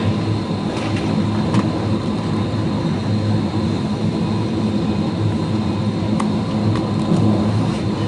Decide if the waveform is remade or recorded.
recorded